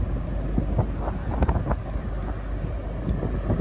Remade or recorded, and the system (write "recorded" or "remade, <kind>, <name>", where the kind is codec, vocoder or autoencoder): recorded